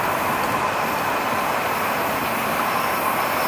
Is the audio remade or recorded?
recorded